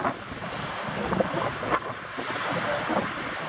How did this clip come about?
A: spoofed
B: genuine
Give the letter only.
B